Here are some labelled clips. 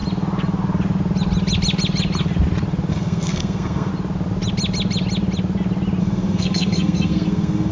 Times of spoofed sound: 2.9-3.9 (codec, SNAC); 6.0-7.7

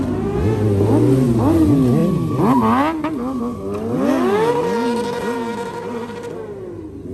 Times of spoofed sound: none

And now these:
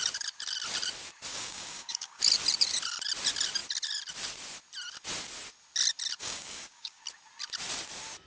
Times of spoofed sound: 1.3-2.2 (codec, DAC); 6.2-7.0

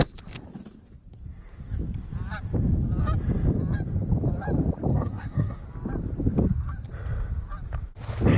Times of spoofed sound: 4.9-5.6 (codec, SNAC)

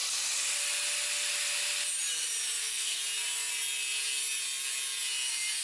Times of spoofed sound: 2.6-3.0 (codec, SNAC)